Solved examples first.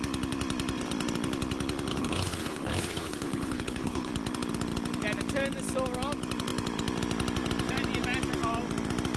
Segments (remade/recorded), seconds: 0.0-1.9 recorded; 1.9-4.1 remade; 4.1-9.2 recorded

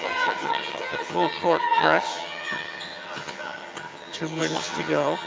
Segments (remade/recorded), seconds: 0.0-5.3 remade

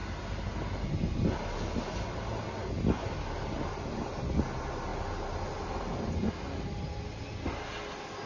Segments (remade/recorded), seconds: 0.0-8.3 recorded